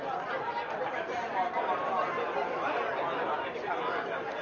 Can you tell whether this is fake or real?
real